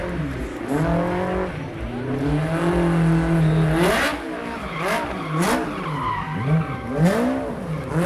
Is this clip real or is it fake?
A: real